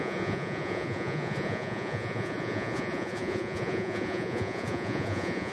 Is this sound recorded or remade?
remade